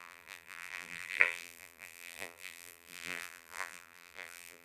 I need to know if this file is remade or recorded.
remade